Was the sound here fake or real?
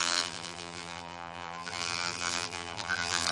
fake